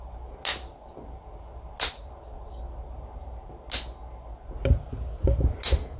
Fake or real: real